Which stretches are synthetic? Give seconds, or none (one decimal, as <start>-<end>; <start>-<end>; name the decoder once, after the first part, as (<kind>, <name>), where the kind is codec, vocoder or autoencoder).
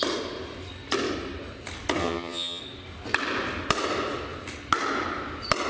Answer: 2.0-2.6 (vocoder, HiFi-GAN)